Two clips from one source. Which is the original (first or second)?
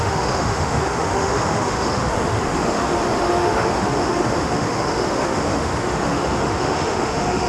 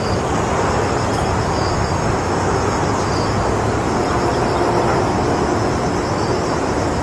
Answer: second